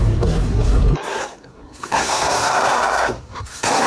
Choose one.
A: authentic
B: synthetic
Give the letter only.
B